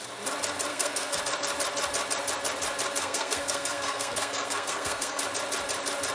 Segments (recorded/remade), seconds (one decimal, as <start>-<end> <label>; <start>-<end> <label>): 0.0-0.7 recorded; 0.7-1.2 remade; 1.2-3.0 recorded; 3.0-5.2 remade; 5.2-6.1 recorded